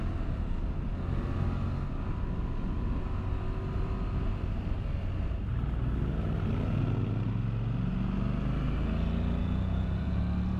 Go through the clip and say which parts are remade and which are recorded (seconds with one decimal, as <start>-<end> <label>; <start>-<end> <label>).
0.0-9.4 recorded; 9.4-10.2 remade; 10.2-10.6 recorded